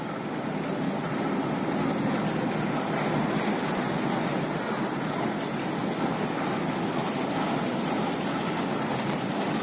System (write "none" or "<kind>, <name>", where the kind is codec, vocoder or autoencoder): none